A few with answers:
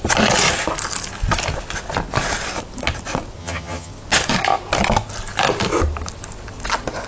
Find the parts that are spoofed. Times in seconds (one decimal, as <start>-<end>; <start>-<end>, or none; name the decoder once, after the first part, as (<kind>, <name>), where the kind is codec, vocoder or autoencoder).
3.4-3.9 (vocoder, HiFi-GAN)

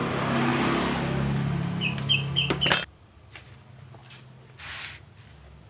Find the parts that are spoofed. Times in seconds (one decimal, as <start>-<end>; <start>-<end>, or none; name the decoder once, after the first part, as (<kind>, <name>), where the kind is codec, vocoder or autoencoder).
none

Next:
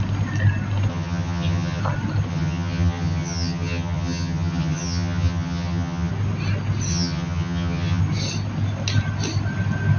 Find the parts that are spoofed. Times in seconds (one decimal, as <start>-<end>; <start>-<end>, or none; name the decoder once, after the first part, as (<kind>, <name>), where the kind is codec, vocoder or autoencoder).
0.9-1.8 (vocoder, HiFi-GAN); 2.3-6.1; 6.9-8.0

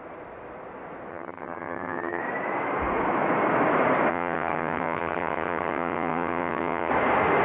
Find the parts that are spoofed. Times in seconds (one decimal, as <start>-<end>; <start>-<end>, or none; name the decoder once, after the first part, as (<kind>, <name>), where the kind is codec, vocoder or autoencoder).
1.1-2.2 (vocoder, HiFi-GAN); 4.1-6.9

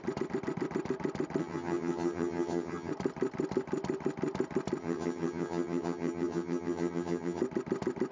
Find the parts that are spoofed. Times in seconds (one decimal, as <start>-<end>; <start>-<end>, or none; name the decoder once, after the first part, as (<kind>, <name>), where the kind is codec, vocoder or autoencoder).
1.4-2.9 (vocoder, HiFi-GAN); 4.8-7.4

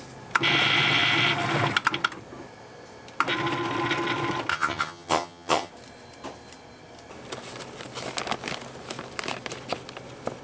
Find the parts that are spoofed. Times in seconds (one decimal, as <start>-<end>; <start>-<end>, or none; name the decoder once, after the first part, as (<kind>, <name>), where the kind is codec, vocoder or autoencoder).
4.5-5.7 (vocoder, HiFi-GAN)